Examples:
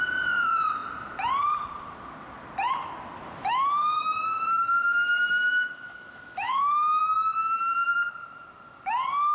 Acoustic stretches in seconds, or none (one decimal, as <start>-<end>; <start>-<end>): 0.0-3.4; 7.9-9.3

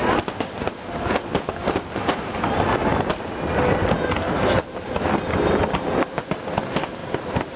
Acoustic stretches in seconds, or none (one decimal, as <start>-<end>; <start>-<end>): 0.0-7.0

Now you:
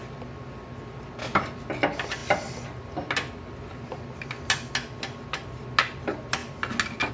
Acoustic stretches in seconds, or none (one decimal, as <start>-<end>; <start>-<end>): 0.0-7.1

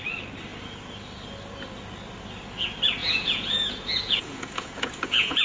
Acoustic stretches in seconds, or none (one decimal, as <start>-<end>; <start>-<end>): 0.0-3.0

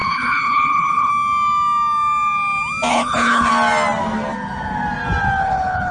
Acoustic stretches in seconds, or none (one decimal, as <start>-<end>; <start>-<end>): 1.1-2.9; 3.5-5.4